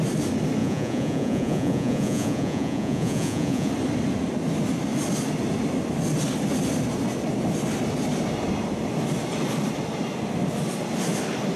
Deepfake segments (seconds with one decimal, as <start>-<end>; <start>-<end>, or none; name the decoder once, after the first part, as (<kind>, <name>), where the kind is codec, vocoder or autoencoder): 0.6-3.7 (vocoder, Vocos)